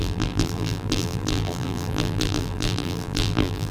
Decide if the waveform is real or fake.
fake